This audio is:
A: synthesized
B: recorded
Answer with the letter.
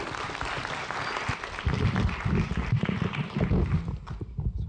B